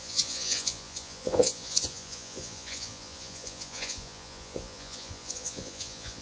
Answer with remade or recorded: remade